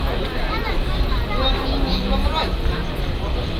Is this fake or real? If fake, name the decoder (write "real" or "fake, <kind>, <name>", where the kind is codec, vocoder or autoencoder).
real